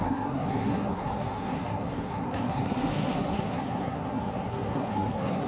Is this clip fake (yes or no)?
yes